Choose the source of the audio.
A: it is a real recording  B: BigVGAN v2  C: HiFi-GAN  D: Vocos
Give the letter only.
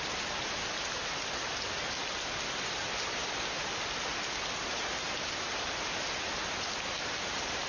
A